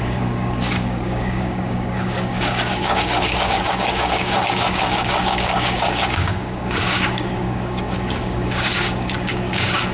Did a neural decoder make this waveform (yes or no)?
yes